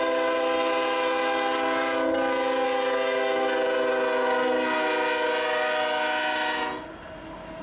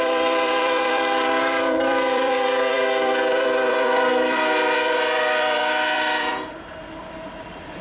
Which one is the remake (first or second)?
second